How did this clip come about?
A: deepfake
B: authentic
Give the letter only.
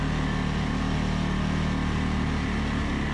B